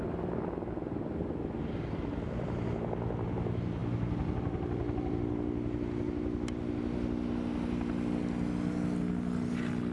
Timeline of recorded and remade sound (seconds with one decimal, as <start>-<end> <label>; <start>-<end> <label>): 0.0-9.9 recorded